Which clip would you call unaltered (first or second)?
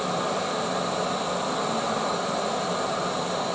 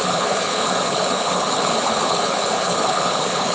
first